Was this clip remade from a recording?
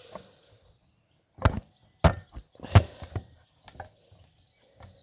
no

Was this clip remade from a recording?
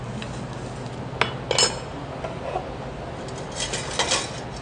no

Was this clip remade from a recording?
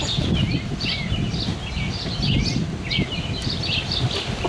no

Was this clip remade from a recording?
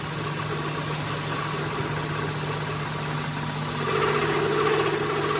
no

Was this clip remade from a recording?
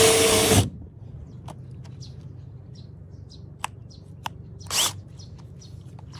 no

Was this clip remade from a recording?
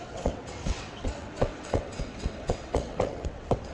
yes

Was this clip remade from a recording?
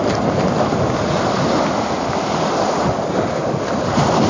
no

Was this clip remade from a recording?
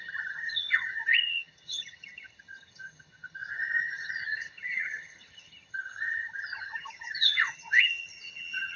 yes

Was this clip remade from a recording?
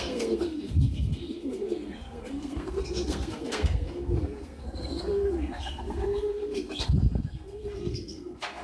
yes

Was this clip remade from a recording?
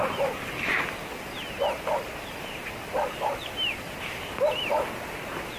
no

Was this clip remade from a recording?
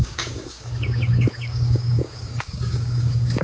yes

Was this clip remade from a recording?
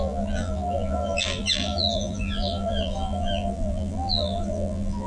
yes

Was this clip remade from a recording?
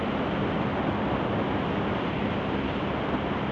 no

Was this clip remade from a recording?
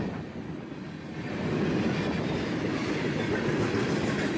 no